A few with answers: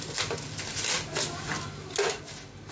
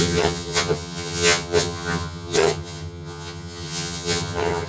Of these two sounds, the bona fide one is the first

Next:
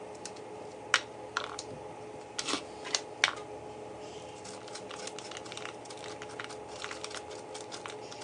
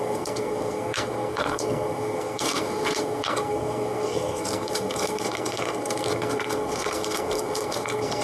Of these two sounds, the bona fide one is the first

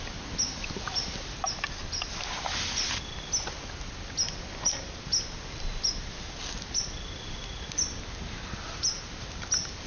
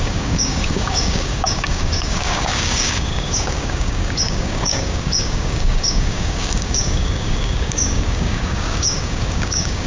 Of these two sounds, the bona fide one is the first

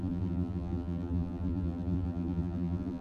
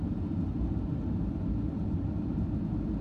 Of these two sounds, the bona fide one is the second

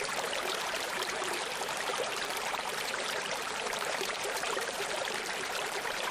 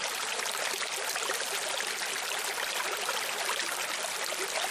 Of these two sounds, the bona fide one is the second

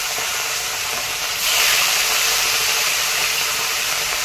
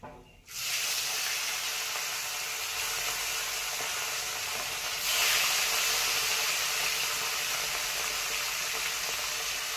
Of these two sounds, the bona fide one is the second